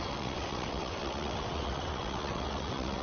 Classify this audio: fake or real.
fake